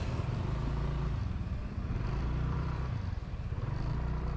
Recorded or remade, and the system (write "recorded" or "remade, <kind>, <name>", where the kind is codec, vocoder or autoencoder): remade, vocoder, BigVGAN v2